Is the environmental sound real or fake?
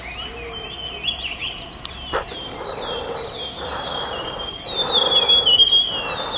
real